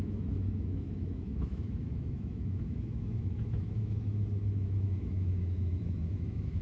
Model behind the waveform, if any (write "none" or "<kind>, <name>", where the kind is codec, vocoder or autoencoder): autoencoder, DAC-VAE